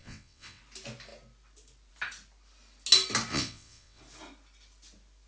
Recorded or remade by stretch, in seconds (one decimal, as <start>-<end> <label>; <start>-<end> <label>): 0.0-0.6 remade; 0.6-3.3 recorded; 3.3-4.0 remade; 4.0-5.3 recorded